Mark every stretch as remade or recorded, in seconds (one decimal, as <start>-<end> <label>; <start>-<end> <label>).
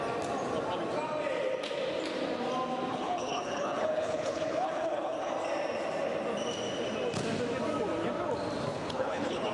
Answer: 0.0-2.9 recorded; 2.9-5.3 remade; 5.3-8.7 recorded; 8.7-9.5 remade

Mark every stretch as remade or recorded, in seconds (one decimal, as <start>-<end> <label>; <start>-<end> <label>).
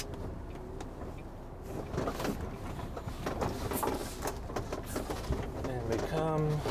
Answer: 0.0-6.7 recorded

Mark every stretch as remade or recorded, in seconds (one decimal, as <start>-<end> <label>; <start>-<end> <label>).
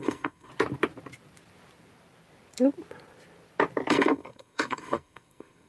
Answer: 0.0-0.5 remade; 0.5-3.9 recorded; 3.9-5.7 remade